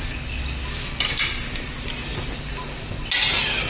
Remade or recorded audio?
recorded